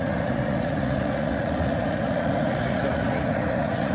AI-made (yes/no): yes